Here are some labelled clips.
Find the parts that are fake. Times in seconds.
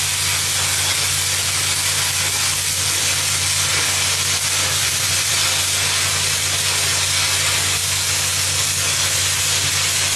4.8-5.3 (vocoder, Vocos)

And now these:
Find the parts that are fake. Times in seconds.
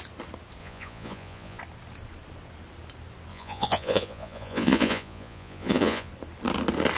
0.6-1.6 (vocoder, Vocos); 3.3-6.1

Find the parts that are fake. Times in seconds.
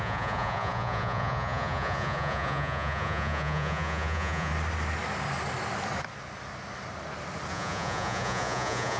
0.0-4.5 (vocoder, Vocos); 7.5-9.0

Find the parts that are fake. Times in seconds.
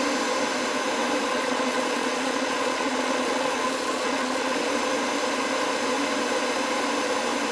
1.3-4.7 (vocoder, Vocos)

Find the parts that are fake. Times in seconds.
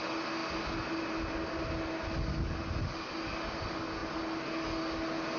none